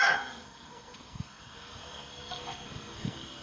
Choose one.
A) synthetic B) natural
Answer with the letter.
A